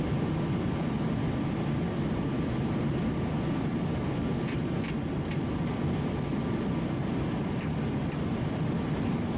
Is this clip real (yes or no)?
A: yes